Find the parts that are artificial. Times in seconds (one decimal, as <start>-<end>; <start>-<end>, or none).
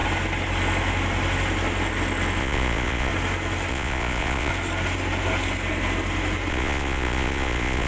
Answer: 2.4-3.1; 3.7-4.5; 6.5-7.9